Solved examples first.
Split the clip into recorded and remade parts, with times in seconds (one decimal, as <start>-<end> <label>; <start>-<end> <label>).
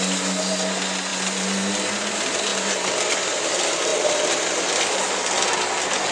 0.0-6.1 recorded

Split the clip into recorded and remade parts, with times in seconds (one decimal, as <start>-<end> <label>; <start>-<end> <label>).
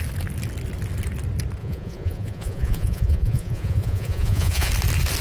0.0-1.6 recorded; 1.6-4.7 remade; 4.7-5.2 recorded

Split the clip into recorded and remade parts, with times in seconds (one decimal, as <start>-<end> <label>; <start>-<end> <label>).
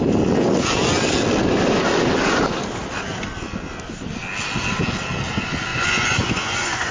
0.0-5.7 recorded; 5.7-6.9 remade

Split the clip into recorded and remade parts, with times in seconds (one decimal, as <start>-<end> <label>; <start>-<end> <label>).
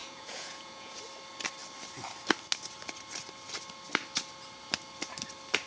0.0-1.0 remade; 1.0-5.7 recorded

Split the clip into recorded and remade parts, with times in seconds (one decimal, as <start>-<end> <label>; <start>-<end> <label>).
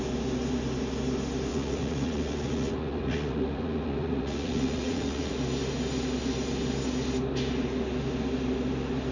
0.0-1.5 recorded; 1.5-5.3 remade; 5.3-9.1 recorded